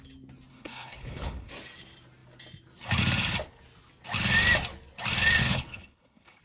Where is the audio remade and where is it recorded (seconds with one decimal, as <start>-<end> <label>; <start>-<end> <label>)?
0.0-0.5 recorded; 0.5-1.5 remade; 1.5-5.4 recorded; 5.4-6.4 remade